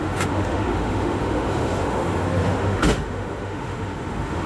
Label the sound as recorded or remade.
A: remade